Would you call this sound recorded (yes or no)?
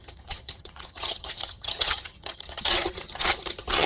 no